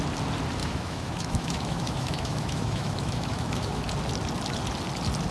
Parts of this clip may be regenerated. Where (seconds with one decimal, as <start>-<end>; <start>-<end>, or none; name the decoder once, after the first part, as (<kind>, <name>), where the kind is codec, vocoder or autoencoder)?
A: 0.6-3.8 (autoencoder, DAC-VAE)